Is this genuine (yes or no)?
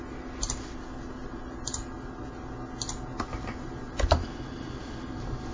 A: yes